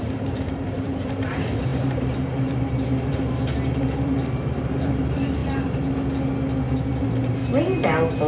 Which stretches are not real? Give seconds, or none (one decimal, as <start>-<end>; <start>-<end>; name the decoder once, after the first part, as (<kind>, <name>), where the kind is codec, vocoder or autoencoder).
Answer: 0.0-5.4 (vocoder, BigVGAN v2); 6.6-7.4